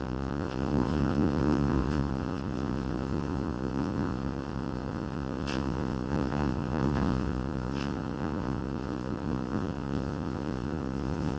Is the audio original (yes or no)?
no